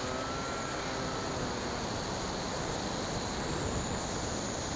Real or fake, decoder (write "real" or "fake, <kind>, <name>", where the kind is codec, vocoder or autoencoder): real